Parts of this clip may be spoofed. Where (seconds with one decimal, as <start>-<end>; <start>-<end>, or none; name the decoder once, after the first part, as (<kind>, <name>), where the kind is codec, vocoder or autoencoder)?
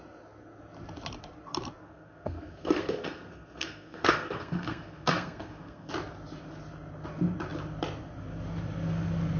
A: 1.8-5.9 (codec, SNAC)